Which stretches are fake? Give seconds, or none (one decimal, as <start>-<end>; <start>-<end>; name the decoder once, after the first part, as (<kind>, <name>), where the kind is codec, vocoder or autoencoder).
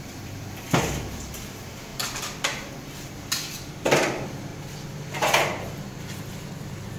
0.0-4.5 (vocoder, BigVGAN v2); 6.0-7.0